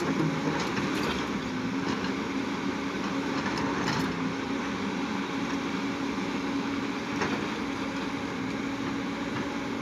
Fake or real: real